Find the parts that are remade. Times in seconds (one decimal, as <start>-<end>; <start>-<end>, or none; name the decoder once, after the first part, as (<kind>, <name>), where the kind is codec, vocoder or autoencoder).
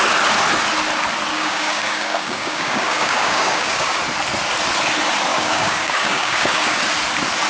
1.3-4.0 (codec, DAC); 5.3-6.8